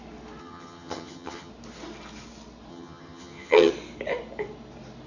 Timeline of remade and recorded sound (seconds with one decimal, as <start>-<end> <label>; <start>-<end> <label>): 0.0-0.4 recorded; 0.4-1.5 remade; 1.5-2.7 recorded; 2.7-3.7 remade; 3.7-5.1 recorded